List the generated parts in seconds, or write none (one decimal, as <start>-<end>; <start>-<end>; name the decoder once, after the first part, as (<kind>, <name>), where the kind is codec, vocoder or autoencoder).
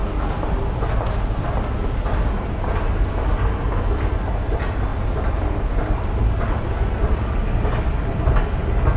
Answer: none